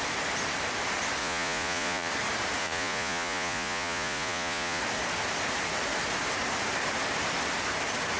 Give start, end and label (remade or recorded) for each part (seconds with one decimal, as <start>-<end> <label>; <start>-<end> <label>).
0.0-1.2 recorded; 1.2-2.1 remade; 2.1-2.6 recorded; 2.6-4.8 remade; 4.8-8.2 recorded